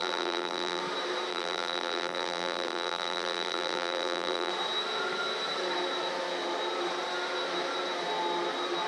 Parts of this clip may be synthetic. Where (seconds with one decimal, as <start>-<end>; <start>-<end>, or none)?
0.0-0.8; 1.3-4.5

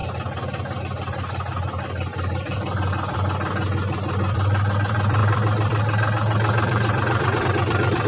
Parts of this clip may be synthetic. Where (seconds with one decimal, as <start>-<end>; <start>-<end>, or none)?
0.8-8.1

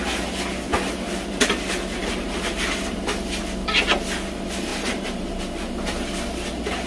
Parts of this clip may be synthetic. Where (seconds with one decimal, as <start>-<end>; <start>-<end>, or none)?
2.0-3.1; 4.7-5.4